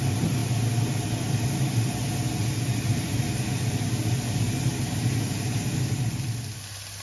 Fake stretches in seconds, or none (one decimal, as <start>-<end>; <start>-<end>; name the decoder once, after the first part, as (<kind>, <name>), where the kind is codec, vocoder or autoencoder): none